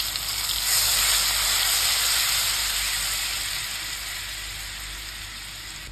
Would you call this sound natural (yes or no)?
yes